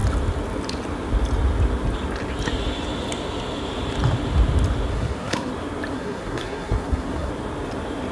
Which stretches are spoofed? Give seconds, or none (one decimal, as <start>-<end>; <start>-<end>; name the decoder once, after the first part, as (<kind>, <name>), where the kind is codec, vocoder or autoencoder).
4.9-5.5 (codec, SNAC); 5.9-7.3